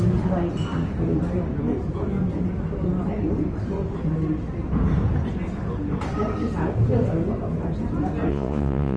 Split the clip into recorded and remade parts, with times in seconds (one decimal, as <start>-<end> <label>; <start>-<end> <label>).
0.0-8.3 recorded; 8.3-9.0 remade